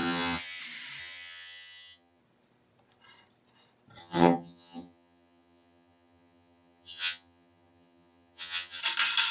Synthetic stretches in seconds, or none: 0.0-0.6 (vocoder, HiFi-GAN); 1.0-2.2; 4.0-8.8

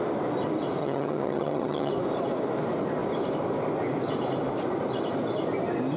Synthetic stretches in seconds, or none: 0.8-1.9 (vocoder, HiFi-GAN)

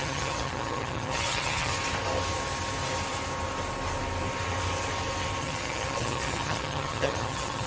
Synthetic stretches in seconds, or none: 0.0-1.7 (vocoder, HiFi-GAN); 5.4-7.7

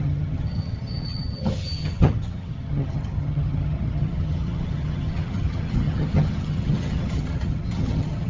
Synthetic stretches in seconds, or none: 0.0-8.3 (vocoder, HiFi-GAN)

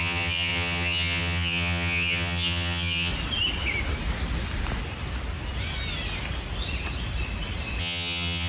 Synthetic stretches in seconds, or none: 0.0-3.1 (vocoder, HiFi-GAN); 7.8-8.5

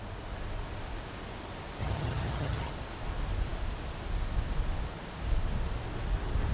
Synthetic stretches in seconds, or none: 1.8-2.7 (vocoder, HiFi-GAN)

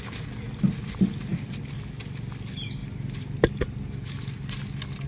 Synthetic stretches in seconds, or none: none